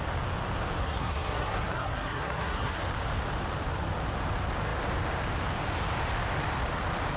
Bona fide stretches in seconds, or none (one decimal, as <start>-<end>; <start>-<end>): 0.0-0.8; 2.8-7.2